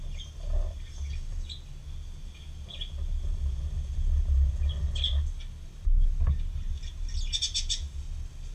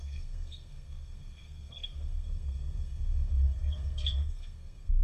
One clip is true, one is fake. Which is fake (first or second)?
second